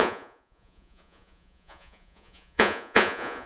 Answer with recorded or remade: remade